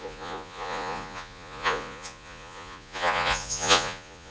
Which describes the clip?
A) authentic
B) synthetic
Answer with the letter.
B